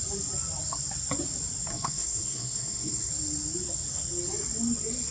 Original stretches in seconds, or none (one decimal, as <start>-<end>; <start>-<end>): 0.0-1.7; 3.1-5.1